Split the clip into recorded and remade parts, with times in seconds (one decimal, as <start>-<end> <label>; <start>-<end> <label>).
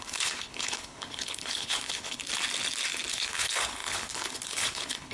0.0-2.2 remade; 2.2-3.1 recorded; 3.1-5.1 remade